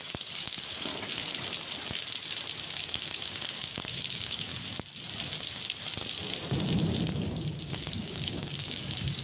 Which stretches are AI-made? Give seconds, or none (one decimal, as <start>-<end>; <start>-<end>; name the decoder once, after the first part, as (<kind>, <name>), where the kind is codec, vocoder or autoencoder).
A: 0.0-0.9 (codec, DAC); 2.7-4.5; 7.1-9.2